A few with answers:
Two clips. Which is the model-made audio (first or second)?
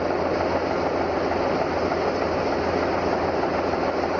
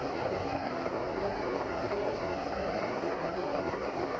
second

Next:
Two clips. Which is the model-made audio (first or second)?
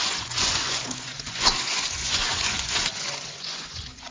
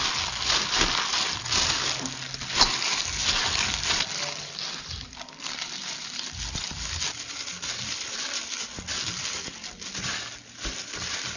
first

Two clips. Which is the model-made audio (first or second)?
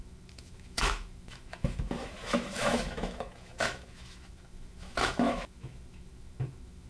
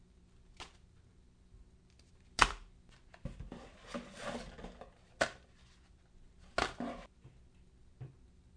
first